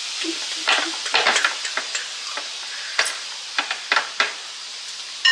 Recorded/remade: recorded